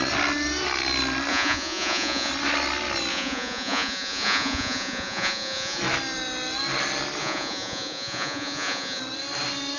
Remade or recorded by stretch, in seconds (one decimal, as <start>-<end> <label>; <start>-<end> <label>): 0.0-1.3 recorded; 1.3-2.3 remade; 2.3-3.1 recorded; 3.1-5.8 remade; 5.8-7.2 recorded; 7.2-9.0 remade; 9.0-9.8 recorded

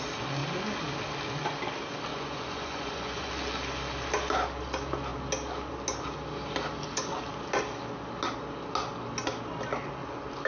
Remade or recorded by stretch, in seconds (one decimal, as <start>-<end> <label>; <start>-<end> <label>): 0.0-2.1 recorded; 2.1-3.3 remade; 3.3-10.5 recorded